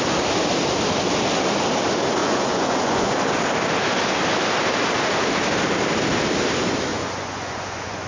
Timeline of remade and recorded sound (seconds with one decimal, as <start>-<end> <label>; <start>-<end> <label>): 0.0-2.2 recorded; 2.2-3.1 remade; 3.1-6.9 recorded; 6.9-8.1 remade